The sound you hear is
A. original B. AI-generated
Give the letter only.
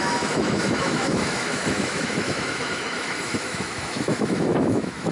B